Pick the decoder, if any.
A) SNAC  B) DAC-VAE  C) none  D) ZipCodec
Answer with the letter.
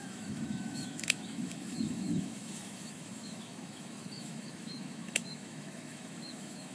B